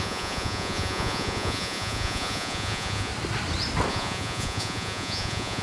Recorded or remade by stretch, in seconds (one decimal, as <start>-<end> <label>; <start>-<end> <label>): 0.0-3.1 remade; 3.1-3.9 recorded; 3.9-5.6 remade